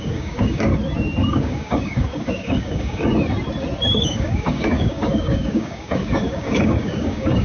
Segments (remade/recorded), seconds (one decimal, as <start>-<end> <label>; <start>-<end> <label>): 0.0-0.7 remade; 0.7-1.3 recorded; 1.3-3.1 remade; 3.1-4.0 recorded; 4.0-7.4 remade